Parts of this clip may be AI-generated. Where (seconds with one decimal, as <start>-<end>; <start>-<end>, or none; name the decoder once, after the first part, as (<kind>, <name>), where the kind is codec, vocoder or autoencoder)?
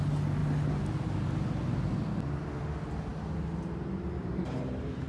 4.2-5.1 (vocoder, BigVGAN v2)